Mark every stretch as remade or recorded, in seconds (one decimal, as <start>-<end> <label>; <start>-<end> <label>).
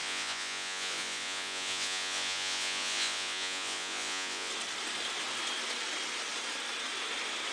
0.0-4.5 remade; 4.5-7.5 recorded